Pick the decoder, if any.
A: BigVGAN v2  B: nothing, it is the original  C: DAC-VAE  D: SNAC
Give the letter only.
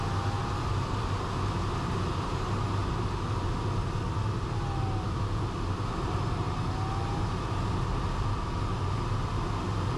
B